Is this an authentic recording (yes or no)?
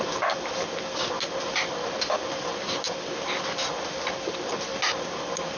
yes